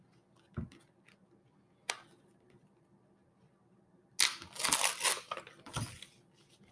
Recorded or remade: recorded